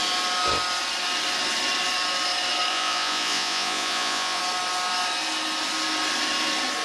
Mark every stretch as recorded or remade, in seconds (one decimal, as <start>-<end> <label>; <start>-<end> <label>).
0.0-2.7 recorded; 2.7-4.4 remade; 4.4-6.8 recorded